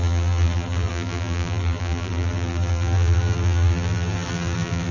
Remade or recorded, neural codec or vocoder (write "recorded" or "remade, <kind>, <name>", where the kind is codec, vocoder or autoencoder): remade, vocoder, BigVGAN v2